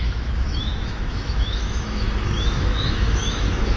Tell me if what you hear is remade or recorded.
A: remade